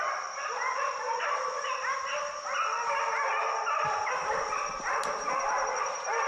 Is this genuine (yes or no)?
yes